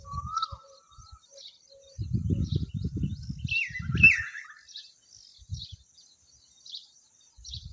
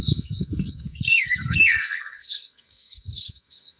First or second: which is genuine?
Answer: first